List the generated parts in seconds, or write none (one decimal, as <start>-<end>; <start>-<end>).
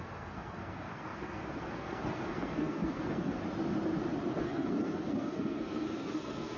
0.0-3.4; 4.4-6.6